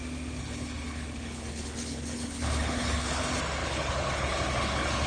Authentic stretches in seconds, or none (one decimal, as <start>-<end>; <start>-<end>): 0.0-0.4; 3.2-3.6